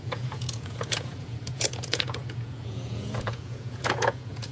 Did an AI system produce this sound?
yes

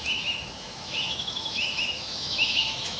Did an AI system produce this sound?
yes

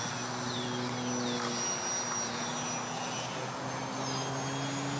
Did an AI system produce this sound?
no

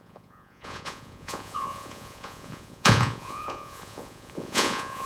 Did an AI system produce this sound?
yes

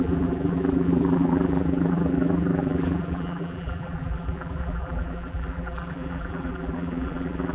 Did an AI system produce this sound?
yes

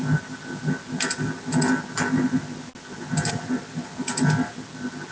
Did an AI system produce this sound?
no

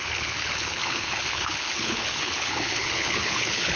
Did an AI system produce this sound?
yes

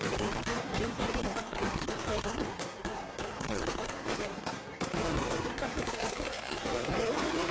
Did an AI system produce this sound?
yes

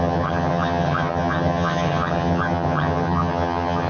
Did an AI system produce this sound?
yes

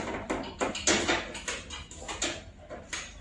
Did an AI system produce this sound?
no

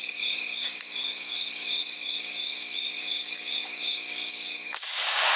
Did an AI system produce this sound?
yes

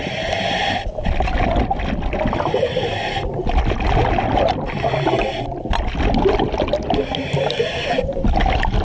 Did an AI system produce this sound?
no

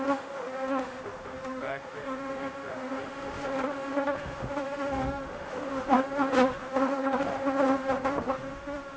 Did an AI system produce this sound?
yes